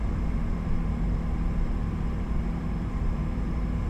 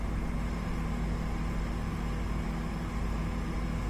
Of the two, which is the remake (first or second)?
first